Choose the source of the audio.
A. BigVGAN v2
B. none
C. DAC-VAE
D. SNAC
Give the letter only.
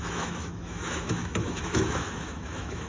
C